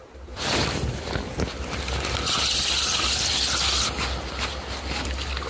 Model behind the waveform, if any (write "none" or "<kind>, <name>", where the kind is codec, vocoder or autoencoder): none